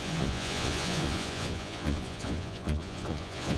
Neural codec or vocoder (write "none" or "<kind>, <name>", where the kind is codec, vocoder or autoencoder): vocoder, Vocos